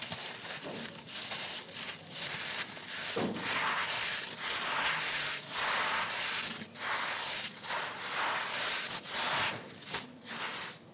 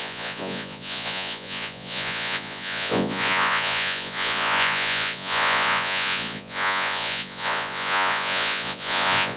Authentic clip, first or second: first